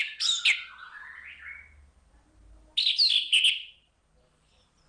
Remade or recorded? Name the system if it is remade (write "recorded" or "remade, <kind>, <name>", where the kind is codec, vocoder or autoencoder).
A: recorded